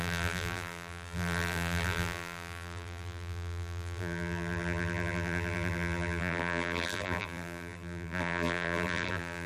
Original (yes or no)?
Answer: no